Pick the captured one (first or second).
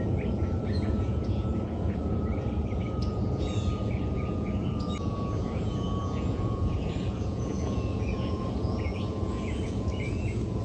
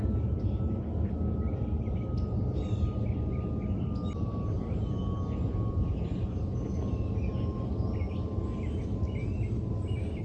second